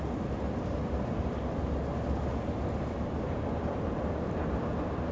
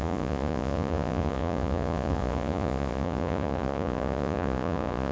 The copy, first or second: second